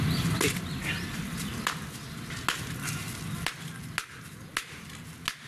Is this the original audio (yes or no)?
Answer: yes